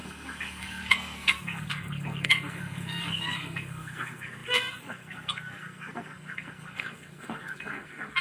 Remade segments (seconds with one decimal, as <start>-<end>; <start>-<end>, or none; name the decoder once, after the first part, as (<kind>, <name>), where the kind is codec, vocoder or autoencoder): 0.0-8.2 (codec, SNAC)